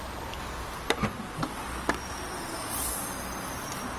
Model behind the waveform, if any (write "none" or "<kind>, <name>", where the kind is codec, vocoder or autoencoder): none